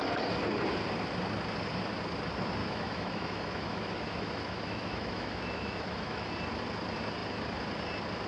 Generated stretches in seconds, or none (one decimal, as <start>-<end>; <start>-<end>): 2.6-6.3